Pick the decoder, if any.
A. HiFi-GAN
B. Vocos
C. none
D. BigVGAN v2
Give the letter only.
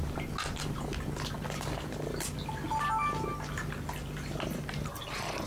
C